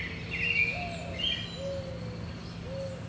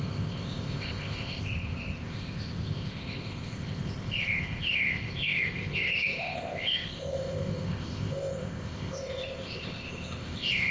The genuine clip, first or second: first